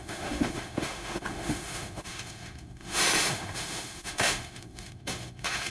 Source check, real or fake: fake